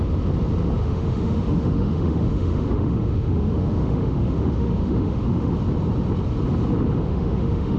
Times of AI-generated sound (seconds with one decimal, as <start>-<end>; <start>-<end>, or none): 0.8-5.5; 7.0-7.8